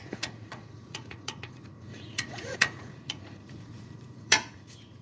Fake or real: fake